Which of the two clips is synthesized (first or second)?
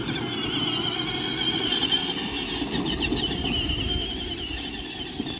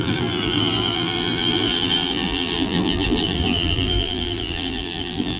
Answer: second